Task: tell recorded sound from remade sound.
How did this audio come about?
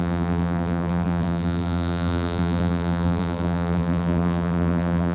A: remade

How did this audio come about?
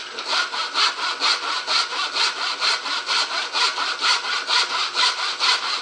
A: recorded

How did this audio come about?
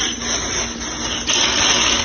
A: recorded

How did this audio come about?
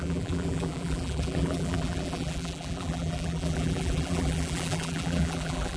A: remade